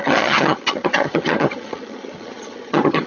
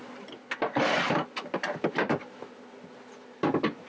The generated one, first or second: first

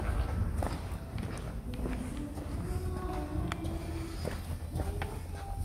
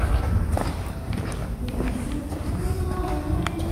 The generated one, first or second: second